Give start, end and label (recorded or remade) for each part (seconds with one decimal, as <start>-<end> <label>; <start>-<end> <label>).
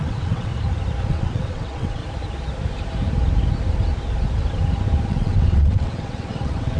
0.0-0.5 remade; 0.5-1.1 recorded; 1.1-2.0 remade; 2.0-5.1 recorded; 5.1-6.8 remade